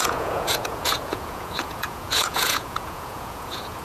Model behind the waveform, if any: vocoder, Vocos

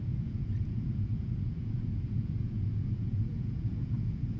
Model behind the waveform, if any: vocoder, Vocos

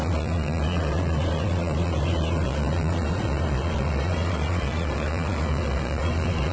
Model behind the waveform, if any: vocoder, Vocos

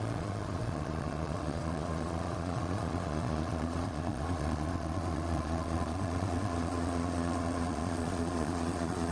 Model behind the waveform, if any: vocoder, Vocos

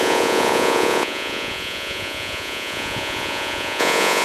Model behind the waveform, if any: vocoder, Vocos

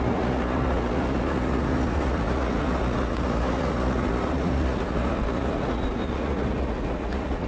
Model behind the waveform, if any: vocoder, Vocos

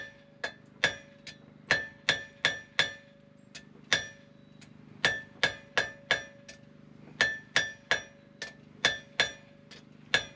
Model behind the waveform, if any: none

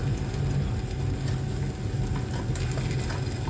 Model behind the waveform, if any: none